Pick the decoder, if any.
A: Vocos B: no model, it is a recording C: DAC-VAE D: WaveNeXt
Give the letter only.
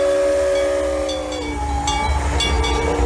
B